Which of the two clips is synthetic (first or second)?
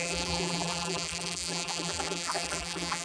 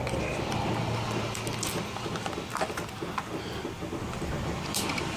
first